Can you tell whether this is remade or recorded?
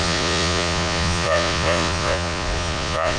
remade